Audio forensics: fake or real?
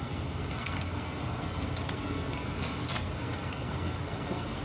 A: fake